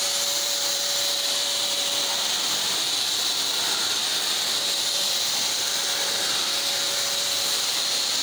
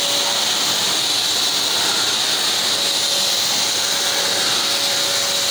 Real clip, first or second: second